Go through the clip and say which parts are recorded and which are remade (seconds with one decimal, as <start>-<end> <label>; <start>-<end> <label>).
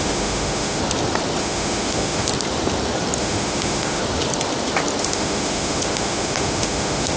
0.0-0.8 remade; 0.8-1.4 recorded; 1.4-2.3 remade; 2.3-3.2 recorded; 3.2-4.0 remade; 4.0-5.0 recorded; 5.0-7.2 remade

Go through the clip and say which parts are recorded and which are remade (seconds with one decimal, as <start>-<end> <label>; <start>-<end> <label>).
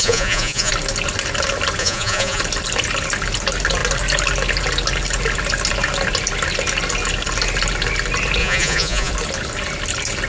0.0-0.7 remade; 0.7-1.8 recorded; 1.8-2.4 remade; 2.4-8.4 recorded; 8.4-9.1 remade; 9.1-10.3 recorded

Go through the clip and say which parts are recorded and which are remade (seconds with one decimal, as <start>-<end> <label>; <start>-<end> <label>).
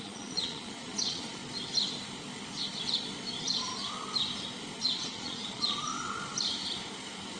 0.0-1.4 remade; 1.4-3.4 recorded; 3.4-3.8 remade; 3.8-4.8 recorded; 4.8-5.9 remade; 5.9-7.4 recorded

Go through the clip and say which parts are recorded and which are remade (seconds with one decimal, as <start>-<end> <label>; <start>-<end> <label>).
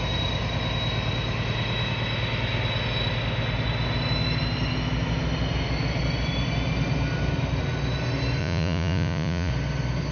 0.0-8.4 recorded; 8.4-9.5 remade; 9.5-10.1 recorded